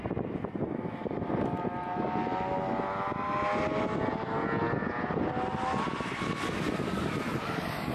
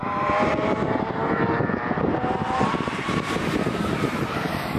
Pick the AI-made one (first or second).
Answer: second